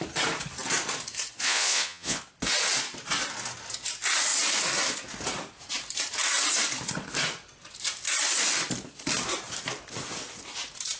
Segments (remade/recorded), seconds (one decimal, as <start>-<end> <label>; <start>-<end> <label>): 0.0-1.4 recorded; 1.4-2.2 remade; 2.2-11.0 recorded